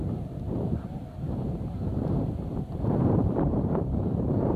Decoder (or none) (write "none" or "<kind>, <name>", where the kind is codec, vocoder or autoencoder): vocoder, BigVGAN v2